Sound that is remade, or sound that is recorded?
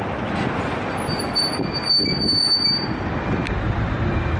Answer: recorded